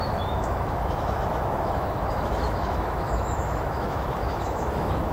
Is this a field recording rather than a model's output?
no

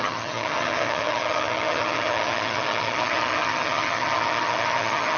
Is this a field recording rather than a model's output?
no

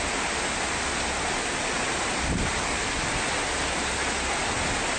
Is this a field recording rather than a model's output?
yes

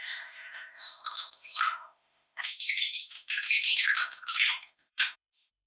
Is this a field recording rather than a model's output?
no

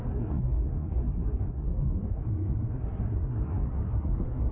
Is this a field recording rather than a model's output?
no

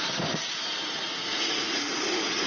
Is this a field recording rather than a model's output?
no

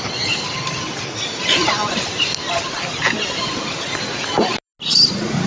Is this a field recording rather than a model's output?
yes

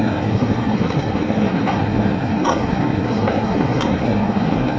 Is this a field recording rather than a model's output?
no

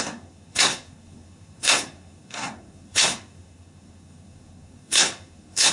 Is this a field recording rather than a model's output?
no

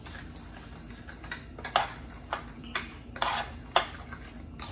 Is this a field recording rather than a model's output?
yes